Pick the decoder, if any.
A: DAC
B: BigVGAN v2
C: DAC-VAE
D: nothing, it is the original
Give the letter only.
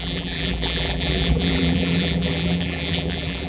B